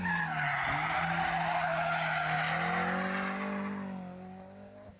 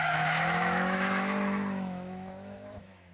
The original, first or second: first